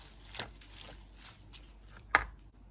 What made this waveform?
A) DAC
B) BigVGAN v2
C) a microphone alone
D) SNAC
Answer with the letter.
C